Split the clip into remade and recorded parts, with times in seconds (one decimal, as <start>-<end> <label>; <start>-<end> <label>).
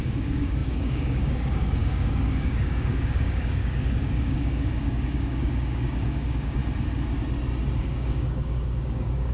0.0-6.6 remade; 6.6-7.8 recorded; 7.8-9.3 remade